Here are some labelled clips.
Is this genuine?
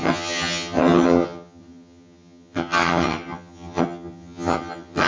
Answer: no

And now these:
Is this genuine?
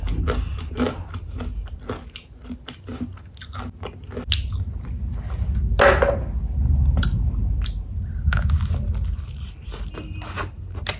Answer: yes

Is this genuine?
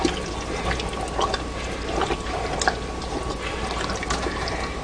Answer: yes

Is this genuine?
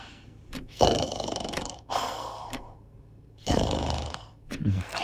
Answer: no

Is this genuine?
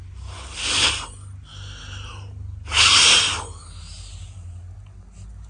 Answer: yes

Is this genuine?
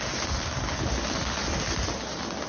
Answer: yes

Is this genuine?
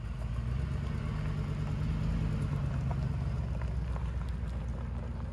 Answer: yes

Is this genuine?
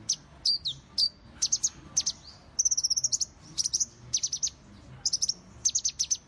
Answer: yes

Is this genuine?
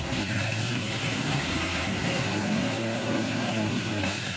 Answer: no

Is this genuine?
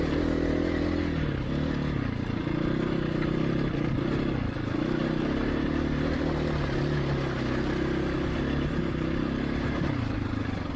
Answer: yes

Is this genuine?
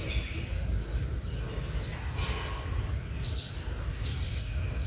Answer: yes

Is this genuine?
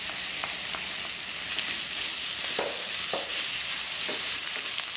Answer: yes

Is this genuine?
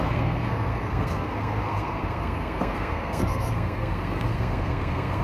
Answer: no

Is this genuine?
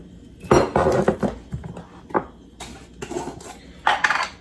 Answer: yes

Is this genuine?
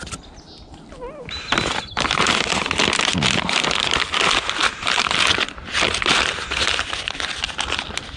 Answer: yes